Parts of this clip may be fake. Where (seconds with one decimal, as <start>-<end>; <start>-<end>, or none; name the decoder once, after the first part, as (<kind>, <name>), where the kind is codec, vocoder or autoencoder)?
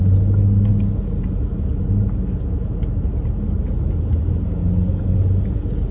none